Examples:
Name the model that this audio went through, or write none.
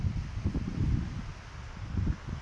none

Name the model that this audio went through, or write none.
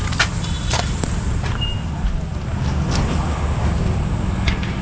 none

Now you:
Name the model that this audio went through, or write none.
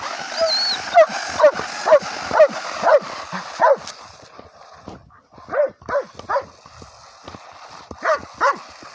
none